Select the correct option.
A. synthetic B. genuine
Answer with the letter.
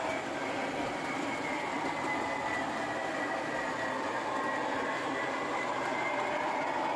B